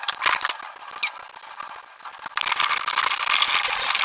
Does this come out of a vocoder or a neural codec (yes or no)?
no